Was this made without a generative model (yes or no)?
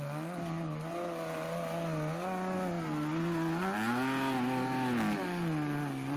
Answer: yes